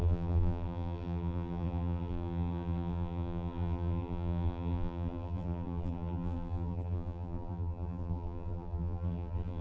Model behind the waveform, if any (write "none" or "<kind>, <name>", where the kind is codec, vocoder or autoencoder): vocoder, BigVGAN v2